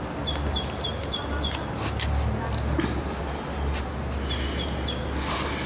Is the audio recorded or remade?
recorded